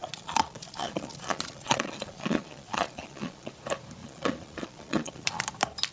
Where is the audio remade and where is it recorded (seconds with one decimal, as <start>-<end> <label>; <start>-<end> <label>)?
0.0-3.5 remade; 3.5-4.0 recorded; 4.0-5.4 remade; 5.4-5.9 recorded